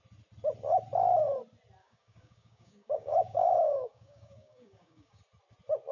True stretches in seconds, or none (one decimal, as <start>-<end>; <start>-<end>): 0.0-1.8; 5.2-5.9